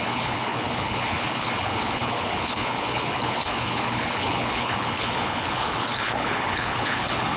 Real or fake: fake